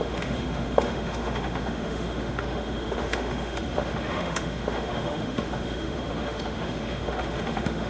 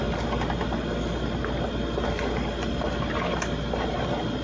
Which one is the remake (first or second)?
first